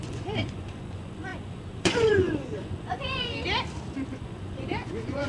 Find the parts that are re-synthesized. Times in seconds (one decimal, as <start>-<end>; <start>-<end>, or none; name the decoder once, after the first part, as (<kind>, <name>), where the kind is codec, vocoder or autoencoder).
0.0-3.3 (vocoder, Vocos); 4.1-5.3